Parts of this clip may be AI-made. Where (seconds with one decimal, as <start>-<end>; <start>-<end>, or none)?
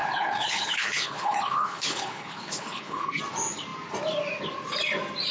0.0-3.2